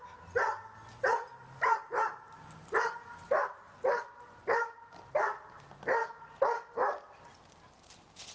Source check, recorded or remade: recorded